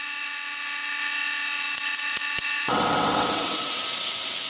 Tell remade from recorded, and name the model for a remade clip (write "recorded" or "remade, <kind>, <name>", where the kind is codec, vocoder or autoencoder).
remade, vocoder, WaveNeXt